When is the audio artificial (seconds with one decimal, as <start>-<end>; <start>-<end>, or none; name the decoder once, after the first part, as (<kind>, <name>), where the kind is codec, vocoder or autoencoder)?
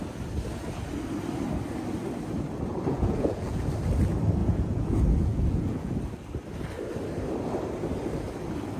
2.9-3.7 (vocoder, Vocos); 4.4-5.9